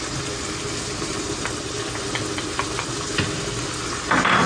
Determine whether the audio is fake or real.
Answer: real